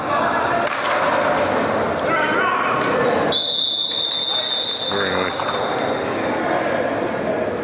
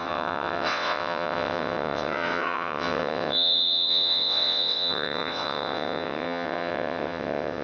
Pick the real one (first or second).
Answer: first